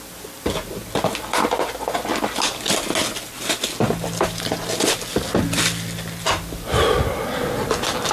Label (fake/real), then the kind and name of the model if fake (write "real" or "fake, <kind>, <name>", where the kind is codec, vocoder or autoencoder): real